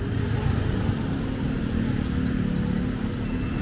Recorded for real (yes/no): yes